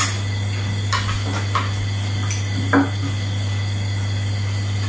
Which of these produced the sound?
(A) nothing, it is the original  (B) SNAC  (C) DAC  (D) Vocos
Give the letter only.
A